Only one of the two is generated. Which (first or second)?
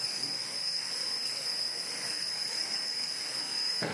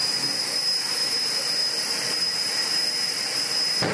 first